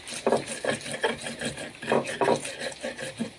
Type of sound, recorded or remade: recorded